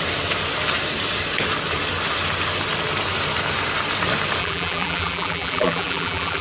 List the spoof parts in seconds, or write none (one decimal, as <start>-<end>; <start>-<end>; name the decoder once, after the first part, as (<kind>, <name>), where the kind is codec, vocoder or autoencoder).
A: 4.4-6.4 (vocoder, BigVGAN v2)